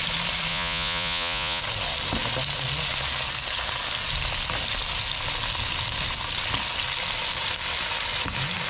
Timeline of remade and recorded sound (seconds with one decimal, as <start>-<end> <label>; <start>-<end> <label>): 0.0-0.5 recorded; 0.5-1.6 remade; 1.6-8.7 recorded